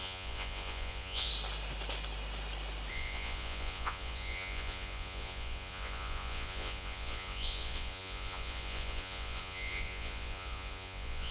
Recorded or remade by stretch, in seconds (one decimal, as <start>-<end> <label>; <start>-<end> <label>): 0.0-1.3 remade; 1.3-2.9 recorded; 2.9-11.3 remade